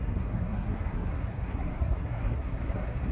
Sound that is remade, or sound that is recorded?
remade